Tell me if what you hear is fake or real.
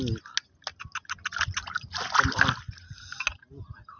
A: real